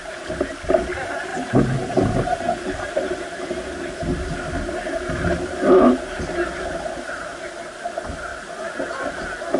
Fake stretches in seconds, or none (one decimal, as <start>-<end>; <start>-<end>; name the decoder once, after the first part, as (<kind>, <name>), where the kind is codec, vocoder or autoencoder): none